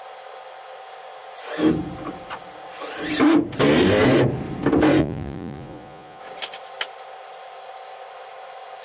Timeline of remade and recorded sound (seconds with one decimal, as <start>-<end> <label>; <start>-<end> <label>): 0.0-5.0 recorded; 5.0-6.2 remade; 6.2-8.8 recorded